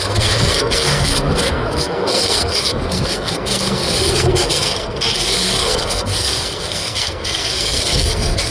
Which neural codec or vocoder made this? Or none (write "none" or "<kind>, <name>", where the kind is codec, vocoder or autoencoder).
codec, SNAC